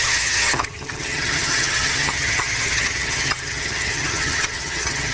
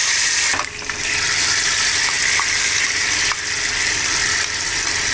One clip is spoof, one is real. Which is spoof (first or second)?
first